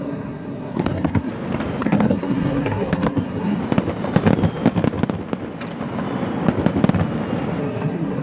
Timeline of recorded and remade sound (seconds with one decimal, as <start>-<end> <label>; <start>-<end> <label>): 0.0-1.3 remade; 1.3-1.8 recorded; 1.8-3.6 remade; 3.6-7.6 recorded; 7.6-8.2 remade